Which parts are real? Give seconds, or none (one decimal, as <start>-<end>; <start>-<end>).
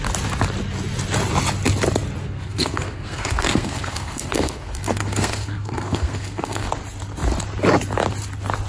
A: 0.0-2.2; 6.7-8.7